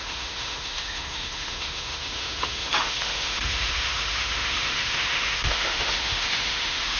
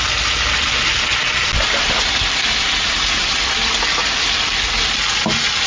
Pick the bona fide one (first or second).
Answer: second